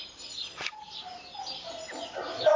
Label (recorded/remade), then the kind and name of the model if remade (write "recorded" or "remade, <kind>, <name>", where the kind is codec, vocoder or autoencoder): recorded